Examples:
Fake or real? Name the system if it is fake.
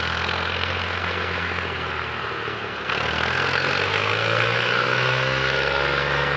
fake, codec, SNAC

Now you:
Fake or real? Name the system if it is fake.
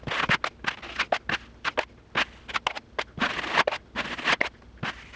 real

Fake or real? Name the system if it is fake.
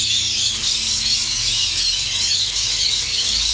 fake, codec, DAC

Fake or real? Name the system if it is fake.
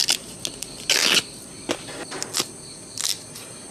real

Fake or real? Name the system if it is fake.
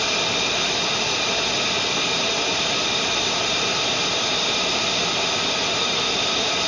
real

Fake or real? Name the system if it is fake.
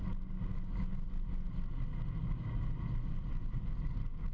real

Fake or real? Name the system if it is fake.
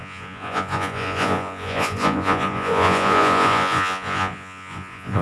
fake, vocoder, Vocos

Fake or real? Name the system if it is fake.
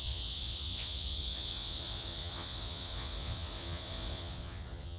fake, vocoder, Vocos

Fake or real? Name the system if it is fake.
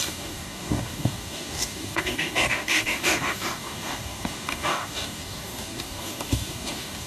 fake, codec, DAC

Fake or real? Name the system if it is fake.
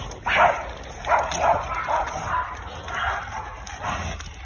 real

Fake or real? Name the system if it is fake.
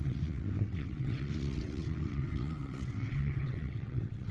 fake, vocoder, WaveNeXt